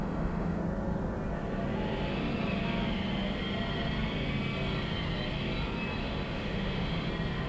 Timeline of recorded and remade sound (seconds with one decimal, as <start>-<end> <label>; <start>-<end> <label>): 0.0-0.6 remade; 0.6-6.0 recorded; 6.0-7.1 remade; 7.1-7.5 recorded